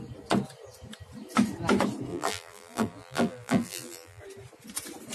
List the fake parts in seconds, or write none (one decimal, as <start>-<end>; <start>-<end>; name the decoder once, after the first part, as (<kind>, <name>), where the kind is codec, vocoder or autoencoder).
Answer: 2.1-4.2 (vocoder, BigVGAN v2)